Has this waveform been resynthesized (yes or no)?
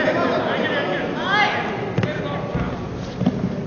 no